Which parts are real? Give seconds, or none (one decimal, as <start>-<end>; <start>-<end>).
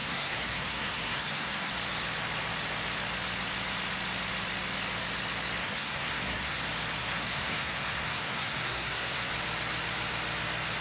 1.7-5.6; 6.6-7.0; 9.3-10.8